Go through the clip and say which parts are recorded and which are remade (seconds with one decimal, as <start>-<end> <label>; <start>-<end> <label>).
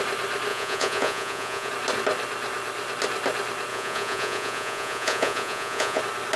0.0-0.5 recorded; 0.5-1.7 remade; 1.7-3.7 recorded; 3.7-6.0 remade; 6.0-6.4 recorded